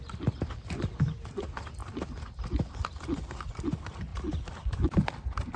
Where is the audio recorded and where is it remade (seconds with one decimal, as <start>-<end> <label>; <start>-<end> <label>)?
0.0-5.6 recorded